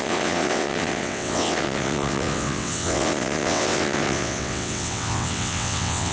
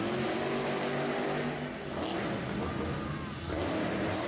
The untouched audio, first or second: second